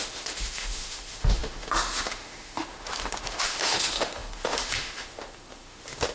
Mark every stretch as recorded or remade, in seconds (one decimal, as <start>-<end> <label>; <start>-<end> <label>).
0.0-6.1 remade